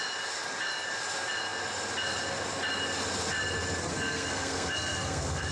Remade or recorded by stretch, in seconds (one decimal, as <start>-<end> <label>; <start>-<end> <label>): 0.0-3.8 recorded; 3.8-5.5 remade